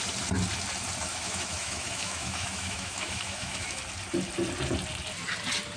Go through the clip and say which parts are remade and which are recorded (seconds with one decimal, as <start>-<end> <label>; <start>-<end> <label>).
0.0-1.1 recorded; 1.1-3.8 remade; 3.8-5.8 recorded